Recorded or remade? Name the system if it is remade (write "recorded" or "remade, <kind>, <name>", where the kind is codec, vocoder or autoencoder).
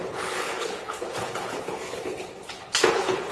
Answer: remade, codec, HILCodec